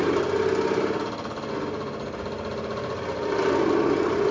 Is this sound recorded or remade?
recorded